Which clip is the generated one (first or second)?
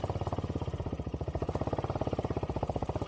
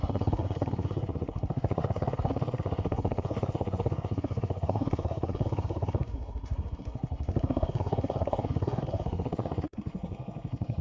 second